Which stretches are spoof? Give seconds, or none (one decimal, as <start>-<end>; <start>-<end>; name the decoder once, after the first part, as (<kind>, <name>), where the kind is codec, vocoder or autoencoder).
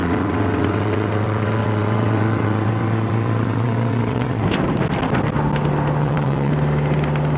0.0-4.4 (vocoder, WaveNeXt); 6.0-6.5